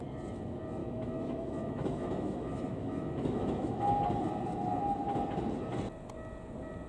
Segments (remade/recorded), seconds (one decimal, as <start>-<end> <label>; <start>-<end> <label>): 0.0-0.8 recorded; 0.8-3.8 remade; 3.8-6.9 recorded